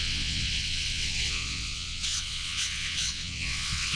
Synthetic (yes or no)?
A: yes